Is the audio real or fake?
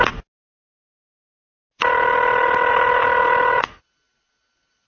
real